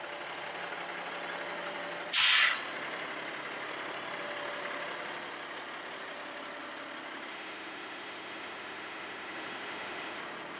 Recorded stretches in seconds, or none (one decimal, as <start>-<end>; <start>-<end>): 0.0-7.3; 10.2-10.6